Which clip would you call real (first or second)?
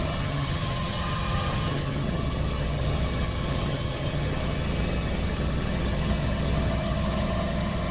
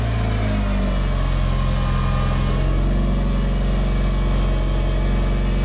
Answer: second